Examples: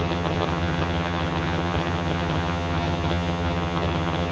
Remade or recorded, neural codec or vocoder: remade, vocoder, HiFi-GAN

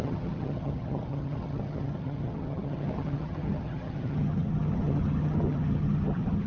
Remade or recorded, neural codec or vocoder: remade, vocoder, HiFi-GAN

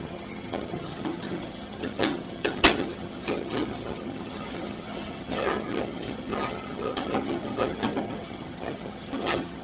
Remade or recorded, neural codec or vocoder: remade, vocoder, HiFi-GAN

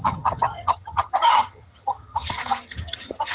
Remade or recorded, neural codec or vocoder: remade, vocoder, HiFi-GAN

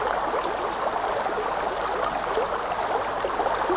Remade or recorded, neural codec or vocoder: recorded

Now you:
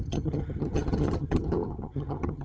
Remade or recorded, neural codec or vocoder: remade, vocoder, HiFi-GAN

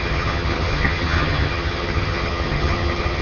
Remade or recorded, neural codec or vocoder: remade, vocoder, HiFi-GAN